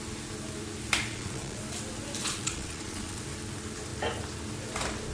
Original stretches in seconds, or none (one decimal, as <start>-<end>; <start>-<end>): 0.0-1.1; 1.6-2.2; 3.2-5.1